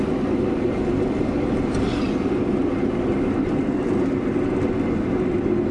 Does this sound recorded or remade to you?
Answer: recorded